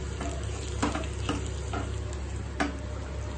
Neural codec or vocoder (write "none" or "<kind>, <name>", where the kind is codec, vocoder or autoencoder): none